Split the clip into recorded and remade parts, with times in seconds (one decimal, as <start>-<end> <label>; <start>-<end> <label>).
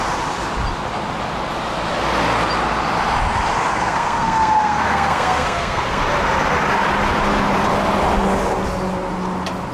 0.0-3.7 recorded; 3.7-6.0 remade; 6.0-9.7 recorded